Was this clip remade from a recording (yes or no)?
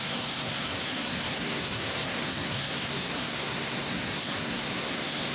yes